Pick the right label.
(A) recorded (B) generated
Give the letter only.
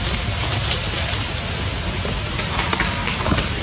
A